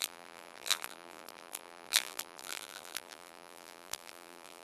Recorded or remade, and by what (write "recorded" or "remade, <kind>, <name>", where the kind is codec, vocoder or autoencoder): remade, vocoder, BigVGAN v2